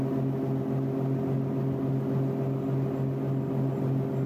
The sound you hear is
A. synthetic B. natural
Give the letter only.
B